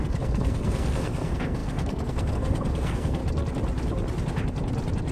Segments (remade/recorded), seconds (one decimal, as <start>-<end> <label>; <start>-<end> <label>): 0.0-3.2 remade; 3.2-5.1 recorded